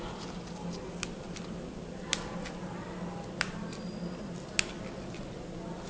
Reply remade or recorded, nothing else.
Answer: recorded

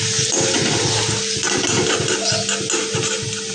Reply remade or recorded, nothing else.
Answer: recorded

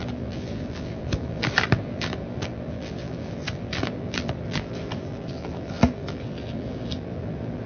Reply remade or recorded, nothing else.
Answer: remade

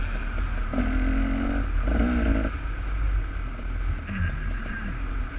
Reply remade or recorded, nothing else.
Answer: recorded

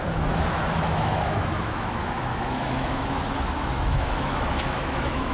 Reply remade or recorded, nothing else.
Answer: remade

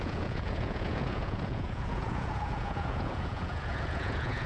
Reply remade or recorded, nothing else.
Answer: remade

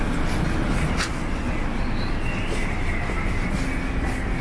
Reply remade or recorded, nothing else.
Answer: recorded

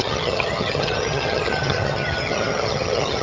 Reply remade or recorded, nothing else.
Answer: remade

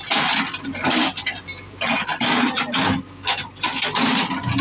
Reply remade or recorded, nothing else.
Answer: recorded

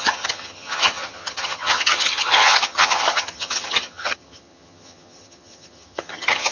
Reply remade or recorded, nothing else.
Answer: remade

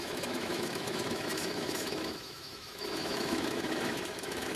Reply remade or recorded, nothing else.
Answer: remade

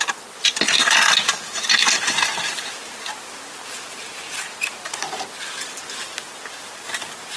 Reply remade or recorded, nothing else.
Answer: recorded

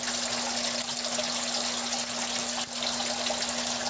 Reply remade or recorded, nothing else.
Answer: recorded